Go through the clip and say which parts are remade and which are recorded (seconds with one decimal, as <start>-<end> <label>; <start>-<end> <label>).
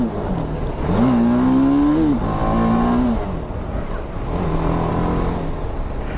0.0-6.2 recorded